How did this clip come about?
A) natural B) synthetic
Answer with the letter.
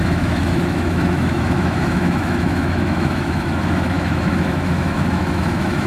B